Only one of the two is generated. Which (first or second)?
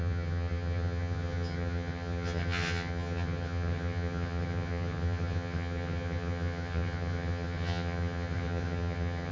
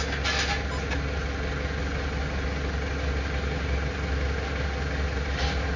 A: first